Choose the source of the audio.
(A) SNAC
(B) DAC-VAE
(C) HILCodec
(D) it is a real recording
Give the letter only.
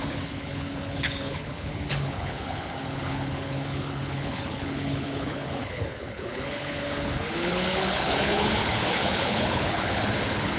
C